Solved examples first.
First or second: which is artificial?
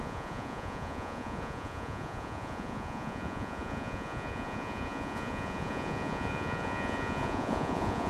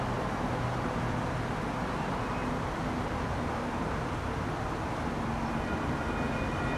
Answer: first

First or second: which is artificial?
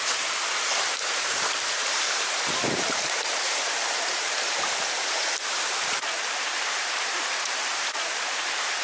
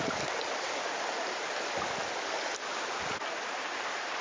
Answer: first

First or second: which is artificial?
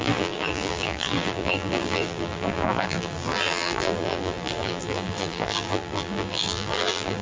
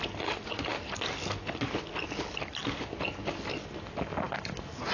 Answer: first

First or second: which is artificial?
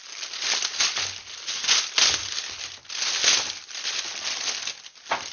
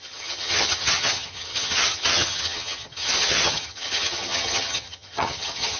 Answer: second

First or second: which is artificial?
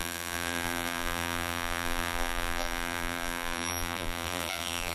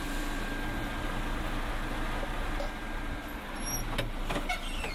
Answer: first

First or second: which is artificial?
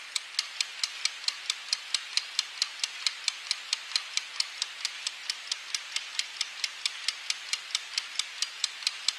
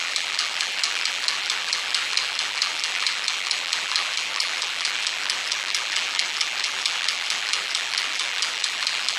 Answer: second